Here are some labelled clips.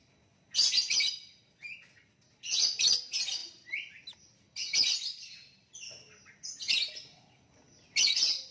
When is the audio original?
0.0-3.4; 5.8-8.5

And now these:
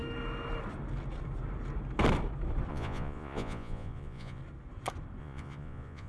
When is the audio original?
0.0-2.7; 4.4-5.2